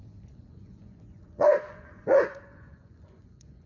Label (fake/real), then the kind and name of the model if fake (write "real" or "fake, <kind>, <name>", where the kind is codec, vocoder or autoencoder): fake, vocoder, Vocos